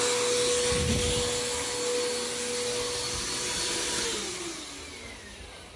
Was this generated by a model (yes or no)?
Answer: no